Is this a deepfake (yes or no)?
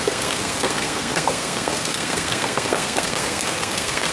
yes